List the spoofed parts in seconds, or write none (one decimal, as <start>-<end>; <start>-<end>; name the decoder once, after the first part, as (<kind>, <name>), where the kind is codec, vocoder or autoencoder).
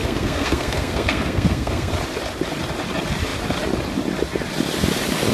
0.0-1.9 (codec, SNAC)